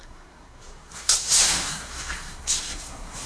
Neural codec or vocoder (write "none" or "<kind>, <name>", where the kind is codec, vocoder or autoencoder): codec, SNAC